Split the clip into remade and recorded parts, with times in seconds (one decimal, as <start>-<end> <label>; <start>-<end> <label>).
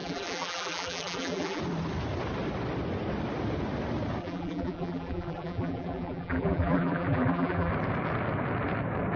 0.0-1.6 remade; 1.6-4.2 recorded; 4.2-7.7 remade; 7.7-9.2 recorded